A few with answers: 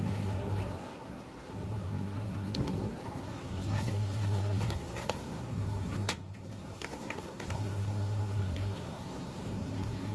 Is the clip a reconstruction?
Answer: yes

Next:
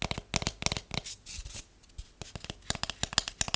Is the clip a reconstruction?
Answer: no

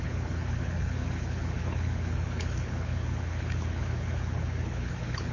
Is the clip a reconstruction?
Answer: yes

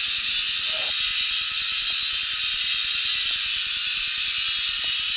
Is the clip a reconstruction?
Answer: no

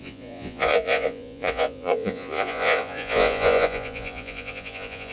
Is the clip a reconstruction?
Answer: yes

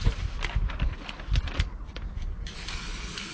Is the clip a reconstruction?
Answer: no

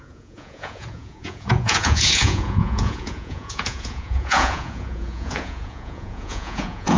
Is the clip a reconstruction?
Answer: yes